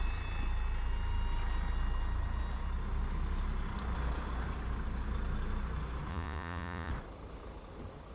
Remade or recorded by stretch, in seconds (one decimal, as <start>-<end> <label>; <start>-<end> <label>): 0.0-6.1 recorded; 6.1-6.9 remade; 6.9-8.1 recorded